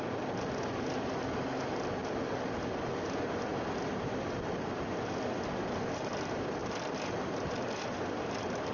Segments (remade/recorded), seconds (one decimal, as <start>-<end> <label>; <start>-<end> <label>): 0.0-8.7 recorded

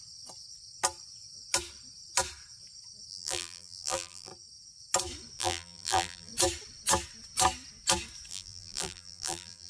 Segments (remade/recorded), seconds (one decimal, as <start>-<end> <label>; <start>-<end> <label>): 0.0-3.1 recorded; 3.1-4.3 remade; 4.3-5.4 recorded; 5.4-6.3 remade; 6.3-8.3 recorded; 8.3-9.7 remade

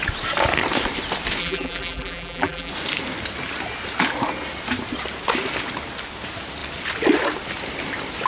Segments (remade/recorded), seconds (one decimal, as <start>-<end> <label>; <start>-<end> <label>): 0.0-1.4 recorded; 1.4-2.7 remade; 2.7-8.3 recorded

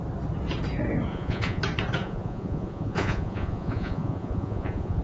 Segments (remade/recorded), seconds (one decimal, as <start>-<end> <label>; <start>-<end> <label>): 0.0-1.1 recorded; 1.1-1.6 remade; 1.6-2.0 recorded; 2.0-5.0 remade

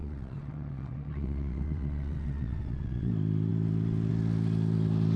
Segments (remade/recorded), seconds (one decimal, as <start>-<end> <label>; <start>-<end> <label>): 0.0-3.1 remade; 3.1-5.2 recorded